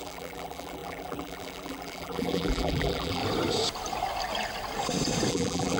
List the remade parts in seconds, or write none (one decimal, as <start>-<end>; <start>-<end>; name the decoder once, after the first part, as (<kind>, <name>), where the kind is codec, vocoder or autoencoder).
0.0-3.2 (vocoder, BigVGAN v2); 5.3-5.8